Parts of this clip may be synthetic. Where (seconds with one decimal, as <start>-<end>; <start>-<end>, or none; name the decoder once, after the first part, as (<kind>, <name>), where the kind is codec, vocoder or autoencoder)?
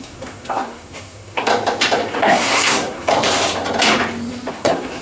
0.0-1.5 (codec, SNAC); 2.1-3.1; 4.5-5.0